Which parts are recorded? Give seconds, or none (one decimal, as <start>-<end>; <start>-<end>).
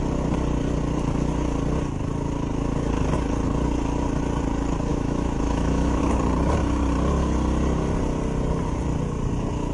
0.0-4.9; 6.0-9.7